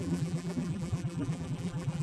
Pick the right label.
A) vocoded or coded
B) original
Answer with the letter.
A